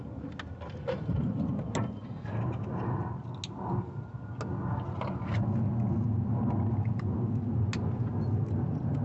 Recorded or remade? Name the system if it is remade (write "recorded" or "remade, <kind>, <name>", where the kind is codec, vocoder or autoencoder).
recorded